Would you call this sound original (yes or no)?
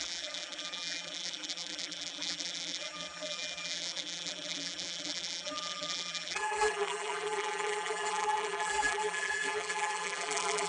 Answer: no